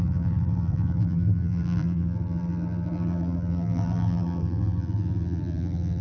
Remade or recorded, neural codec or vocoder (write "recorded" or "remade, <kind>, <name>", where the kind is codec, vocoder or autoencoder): remade, vocoder, BigVGAN v2